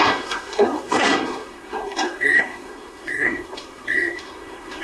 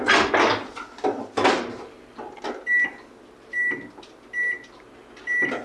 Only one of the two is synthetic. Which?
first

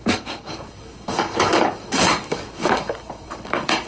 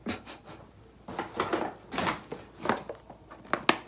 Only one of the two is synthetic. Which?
first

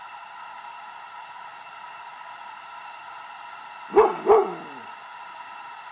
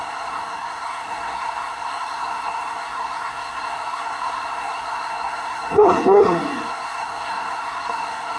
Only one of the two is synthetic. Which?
second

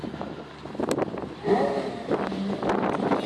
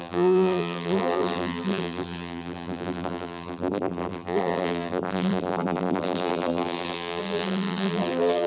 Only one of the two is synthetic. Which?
second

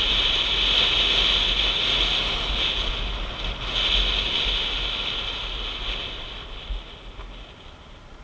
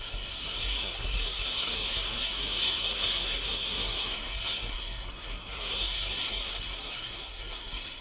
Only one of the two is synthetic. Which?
second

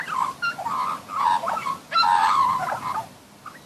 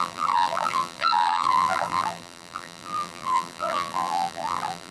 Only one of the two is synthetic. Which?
second